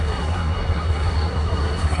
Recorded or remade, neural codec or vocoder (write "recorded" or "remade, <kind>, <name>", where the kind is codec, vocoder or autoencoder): remade, codec, SNAC